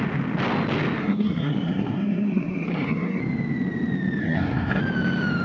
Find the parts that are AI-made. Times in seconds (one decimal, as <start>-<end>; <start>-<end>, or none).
1.0-3.2; 4.2-4.8